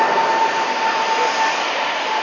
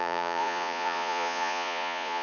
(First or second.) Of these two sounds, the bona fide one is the first